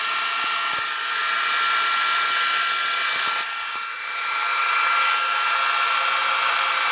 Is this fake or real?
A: real